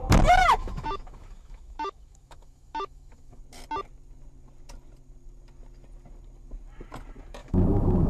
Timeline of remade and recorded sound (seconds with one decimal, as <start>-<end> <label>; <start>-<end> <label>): 0.0-0.4 recorded; 0.4-3.4 remade; 3.4-7.4 recorded; 7.4-8.1 remade